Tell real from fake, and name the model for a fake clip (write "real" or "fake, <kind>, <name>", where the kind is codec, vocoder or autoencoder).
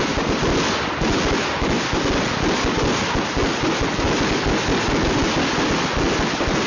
real